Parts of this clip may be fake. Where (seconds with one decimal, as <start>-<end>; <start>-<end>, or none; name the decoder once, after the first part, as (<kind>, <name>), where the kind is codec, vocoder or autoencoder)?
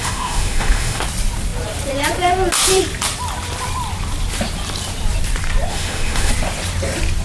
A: 0.0-1.0 (autoencoder, DAC-VAE); 5.7-6.3